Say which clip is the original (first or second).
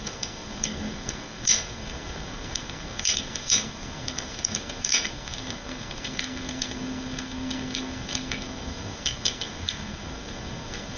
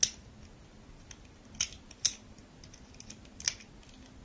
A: second